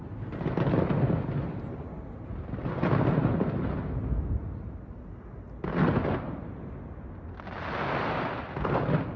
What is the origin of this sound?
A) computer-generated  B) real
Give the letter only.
B